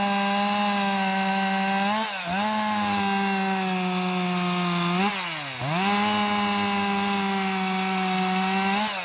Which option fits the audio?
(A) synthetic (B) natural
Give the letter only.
B